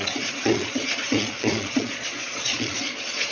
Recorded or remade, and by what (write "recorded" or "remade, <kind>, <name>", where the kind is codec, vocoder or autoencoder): remade, vocoder, Vocos